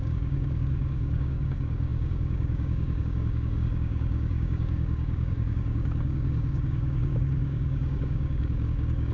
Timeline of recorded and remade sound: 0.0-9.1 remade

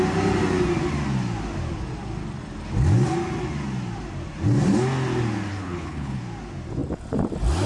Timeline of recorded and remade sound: 0.0-5.5 recorded; 5.5-6.2 remade; 6.2-7.7 recorded

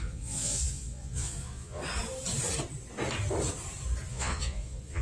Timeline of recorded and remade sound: 0.0-1.8 remade; 1.8-4.1 recorded; 4.1-5.0 remade